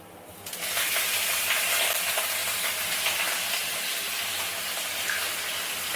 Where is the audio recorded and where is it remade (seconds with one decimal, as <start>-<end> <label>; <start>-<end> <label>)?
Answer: 0.0-6.0 recorded